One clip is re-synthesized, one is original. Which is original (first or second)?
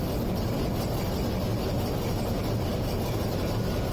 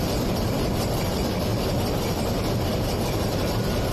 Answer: first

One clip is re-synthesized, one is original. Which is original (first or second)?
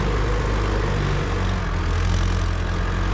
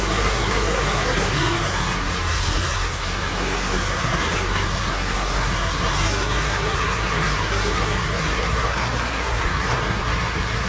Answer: first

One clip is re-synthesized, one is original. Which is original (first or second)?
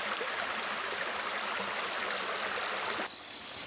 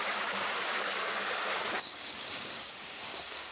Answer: first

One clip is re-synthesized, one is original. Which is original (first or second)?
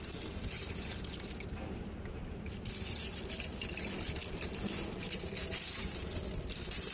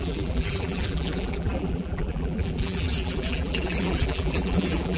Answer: first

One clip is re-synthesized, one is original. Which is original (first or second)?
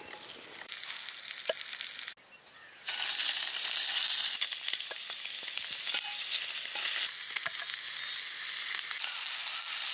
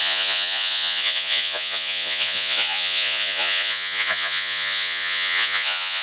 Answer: first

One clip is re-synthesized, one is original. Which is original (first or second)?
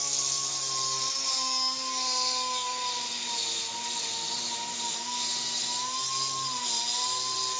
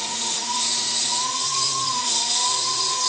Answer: first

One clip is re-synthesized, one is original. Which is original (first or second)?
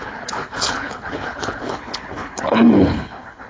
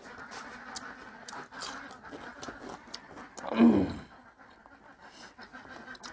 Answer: second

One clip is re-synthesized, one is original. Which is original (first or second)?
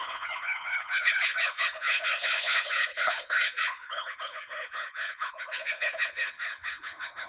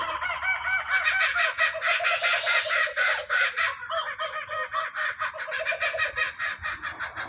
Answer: second